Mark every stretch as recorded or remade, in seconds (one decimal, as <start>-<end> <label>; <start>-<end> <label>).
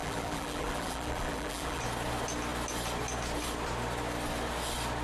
0.0-1.8 remade; 1.8-5.0 recorded